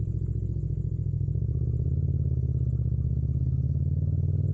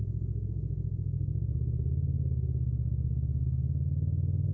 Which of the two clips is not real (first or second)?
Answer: second